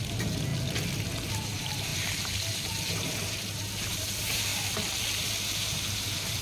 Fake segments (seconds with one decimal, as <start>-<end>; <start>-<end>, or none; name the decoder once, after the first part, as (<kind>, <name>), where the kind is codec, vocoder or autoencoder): 0.0-0.5 (vocoder, BigVGAN v2); 1.3-4.5; 5.0-6.4